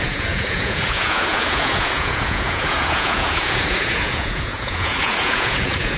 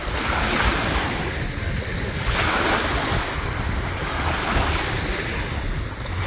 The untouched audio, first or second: second